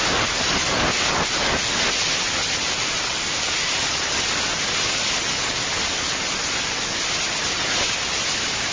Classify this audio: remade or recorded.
recorded